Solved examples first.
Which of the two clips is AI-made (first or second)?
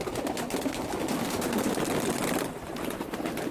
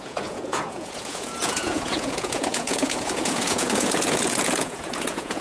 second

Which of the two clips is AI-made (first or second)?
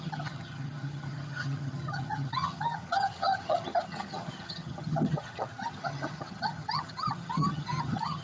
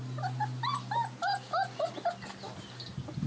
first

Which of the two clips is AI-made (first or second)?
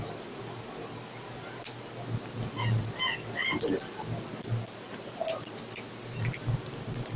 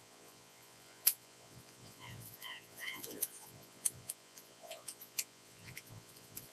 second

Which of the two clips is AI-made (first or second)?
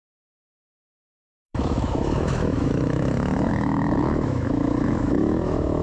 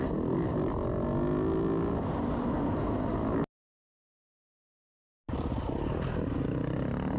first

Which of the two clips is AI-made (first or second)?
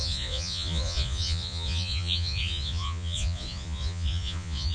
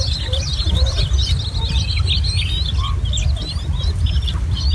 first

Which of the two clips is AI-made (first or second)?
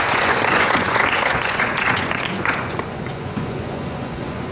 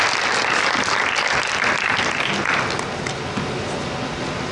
first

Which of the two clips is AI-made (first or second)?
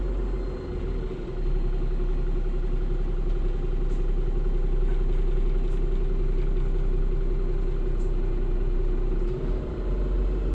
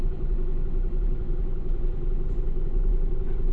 second